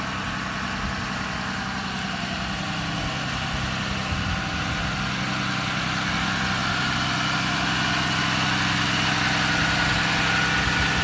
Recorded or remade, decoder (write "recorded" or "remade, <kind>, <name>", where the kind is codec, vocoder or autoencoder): recorded